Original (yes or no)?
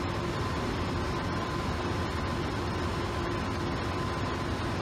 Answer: yes